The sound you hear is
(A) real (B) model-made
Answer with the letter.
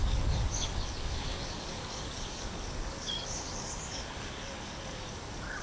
B